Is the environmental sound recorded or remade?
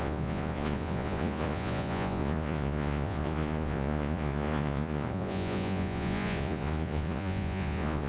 remade